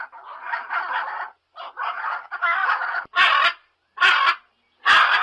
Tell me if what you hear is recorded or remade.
recorded